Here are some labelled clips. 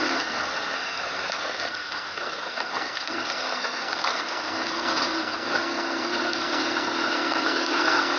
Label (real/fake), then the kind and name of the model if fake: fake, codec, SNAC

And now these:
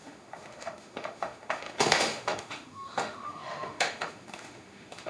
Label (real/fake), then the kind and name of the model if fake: fake, autoencoder, DAC-VAE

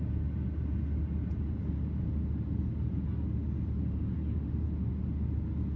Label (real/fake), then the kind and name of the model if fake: real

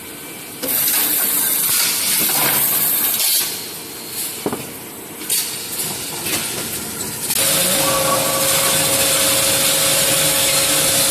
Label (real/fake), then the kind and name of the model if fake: real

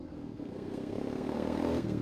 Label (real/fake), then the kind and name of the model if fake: fake, codec, SNAC